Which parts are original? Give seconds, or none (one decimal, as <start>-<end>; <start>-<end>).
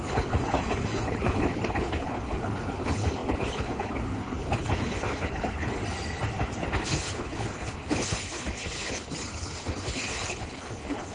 5.8-6.7